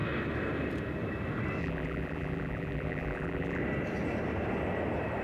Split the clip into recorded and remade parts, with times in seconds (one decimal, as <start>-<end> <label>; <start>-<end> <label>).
0.0-1.6 recorded; 1.6-3.6 remade; 3.6-5.2 recorded